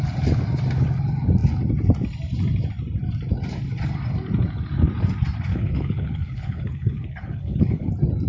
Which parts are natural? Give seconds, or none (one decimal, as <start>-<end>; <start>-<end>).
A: 0.0-5.5; 7.9-8.3